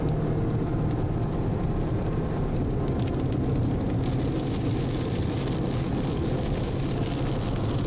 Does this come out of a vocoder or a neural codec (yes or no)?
no